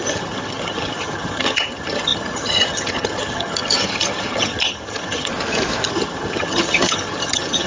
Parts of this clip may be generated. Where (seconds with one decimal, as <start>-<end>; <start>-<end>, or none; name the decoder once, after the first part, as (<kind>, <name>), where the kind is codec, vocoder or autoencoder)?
0.0-5.3 (vocoder, HiFi-GAN); 5.9-7.7

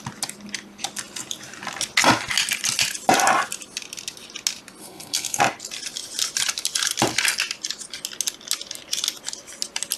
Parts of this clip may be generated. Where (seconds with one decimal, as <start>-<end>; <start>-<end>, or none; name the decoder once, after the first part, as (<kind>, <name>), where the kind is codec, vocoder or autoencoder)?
4.8-5.4 (codec, SNAC)

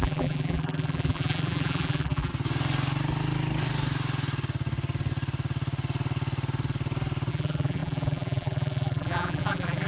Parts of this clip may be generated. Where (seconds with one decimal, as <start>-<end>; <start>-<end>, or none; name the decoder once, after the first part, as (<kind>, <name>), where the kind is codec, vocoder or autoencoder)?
0.0-2.3 (vocoder, BigVGAN v2); 7.3-9.9